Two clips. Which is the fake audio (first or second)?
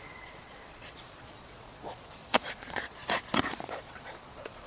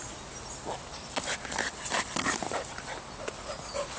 first